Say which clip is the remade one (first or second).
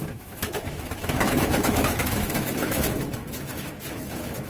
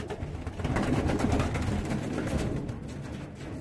first